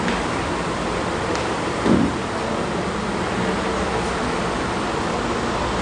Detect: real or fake real